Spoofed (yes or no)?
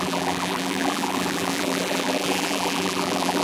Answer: yes